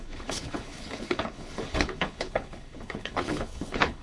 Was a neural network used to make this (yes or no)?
yes